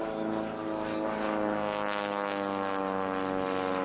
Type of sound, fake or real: real